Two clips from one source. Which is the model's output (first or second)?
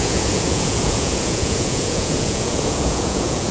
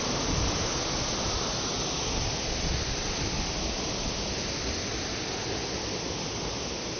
first